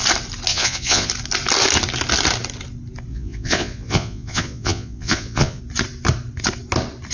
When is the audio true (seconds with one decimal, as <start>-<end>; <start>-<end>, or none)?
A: 0.0-0.5; 1.1-3.1; 5.6-7.1